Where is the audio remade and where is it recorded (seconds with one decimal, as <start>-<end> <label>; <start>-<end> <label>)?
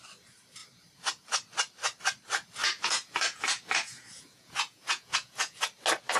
0.0-2.6 recorded; 2.6-5.6 remade; 5.6-6.2 recorded